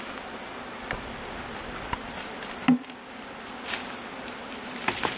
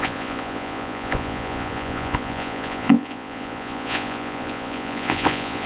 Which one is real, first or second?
first